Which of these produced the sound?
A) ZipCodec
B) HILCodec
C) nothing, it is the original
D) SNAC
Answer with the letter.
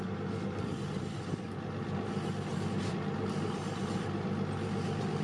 C